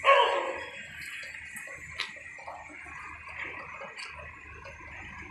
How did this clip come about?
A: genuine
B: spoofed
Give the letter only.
A